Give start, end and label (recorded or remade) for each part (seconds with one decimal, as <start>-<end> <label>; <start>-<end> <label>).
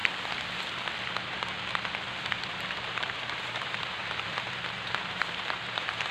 0.0-2.5 recorded; 2.5-4.0 remade; 4.0-5.1 recorded; 5.1-6.1 remade